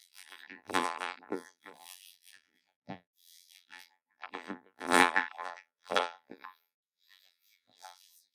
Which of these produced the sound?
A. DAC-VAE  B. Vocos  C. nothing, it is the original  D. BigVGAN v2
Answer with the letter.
D